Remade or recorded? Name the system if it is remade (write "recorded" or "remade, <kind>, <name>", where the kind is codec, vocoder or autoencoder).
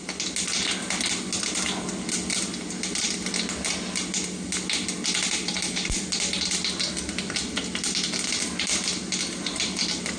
recorded